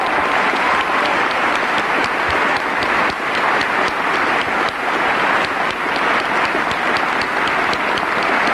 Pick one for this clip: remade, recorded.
recorded